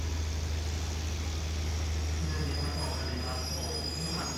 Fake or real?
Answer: real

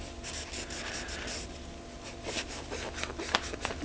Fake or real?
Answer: real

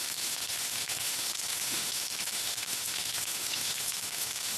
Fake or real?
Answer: fake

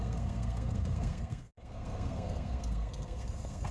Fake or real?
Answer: fake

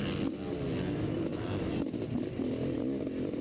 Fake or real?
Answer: real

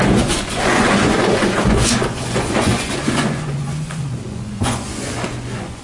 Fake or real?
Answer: fake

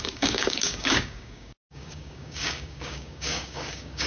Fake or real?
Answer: fake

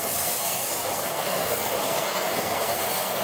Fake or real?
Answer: fake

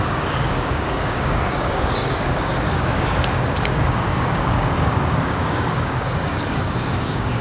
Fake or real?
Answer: fake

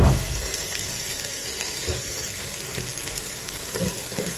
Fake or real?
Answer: fake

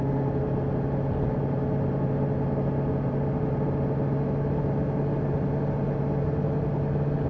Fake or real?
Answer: real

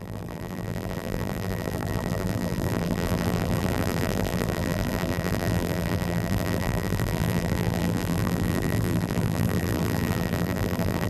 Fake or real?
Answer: fake